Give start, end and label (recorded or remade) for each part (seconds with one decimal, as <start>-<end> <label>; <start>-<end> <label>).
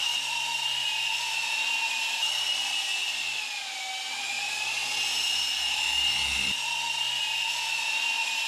0.0-8.5 recorded